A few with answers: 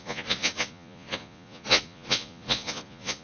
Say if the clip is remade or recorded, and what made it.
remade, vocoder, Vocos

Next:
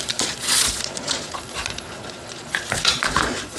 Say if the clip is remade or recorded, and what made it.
remade, vocoder, Vocos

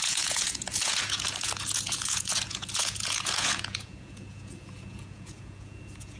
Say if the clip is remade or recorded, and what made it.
remade, vocoder, Vocos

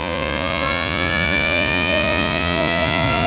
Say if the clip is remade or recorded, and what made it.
remade, vocoder, Vocos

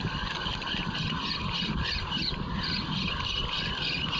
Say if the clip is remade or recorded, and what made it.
recorded